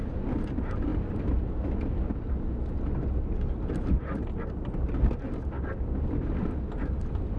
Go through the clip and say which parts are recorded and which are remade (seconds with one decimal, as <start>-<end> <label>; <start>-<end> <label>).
0.0-7.4 recorded